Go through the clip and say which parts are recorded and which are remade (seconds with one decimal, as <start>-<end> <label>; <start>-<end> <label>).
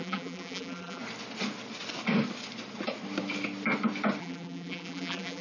0.0-1.0 remade; 1.0-4.2 recorded; 4.2-5.4 remade